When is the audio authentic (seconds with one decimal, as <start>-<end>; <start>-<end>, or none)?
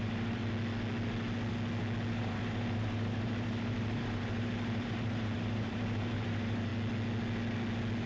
0.4-2.1; 6.7-8.1